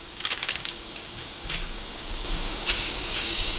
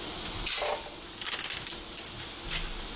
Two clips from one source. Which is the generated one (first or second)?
first